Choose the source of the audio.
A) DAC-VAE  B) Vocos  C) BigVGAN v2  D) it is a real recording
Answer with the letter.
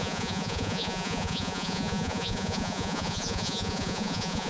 B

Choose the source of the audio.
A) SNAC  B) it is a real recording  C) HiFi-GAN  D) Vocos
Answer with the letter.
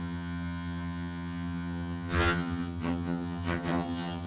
C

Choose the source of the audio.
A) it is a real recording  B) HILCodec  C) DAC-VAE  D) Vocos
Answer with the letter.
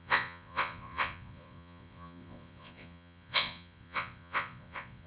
D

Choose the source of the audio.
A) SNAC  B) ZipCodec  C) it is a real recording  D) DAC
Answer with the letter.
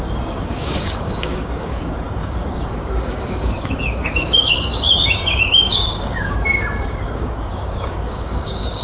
D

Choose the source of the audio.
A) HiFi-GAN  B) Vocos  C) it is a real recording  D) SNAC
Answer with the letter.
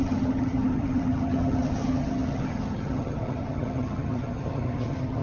A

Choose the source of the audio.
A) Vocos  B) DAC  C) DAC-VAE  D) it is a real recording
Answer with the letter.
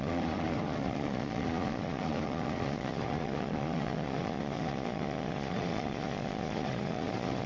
A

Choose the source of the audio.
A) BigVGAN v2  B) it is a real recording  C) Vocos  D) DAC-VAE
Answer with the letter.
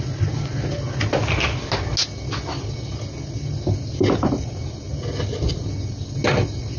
B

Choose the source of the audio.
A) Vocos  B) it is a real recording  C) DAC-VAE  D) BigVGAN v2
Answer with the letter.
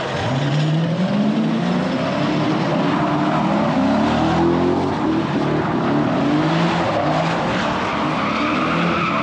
B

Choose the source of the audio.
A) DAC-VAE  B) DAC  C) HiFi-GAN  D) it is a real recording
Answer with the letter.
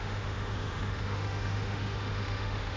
A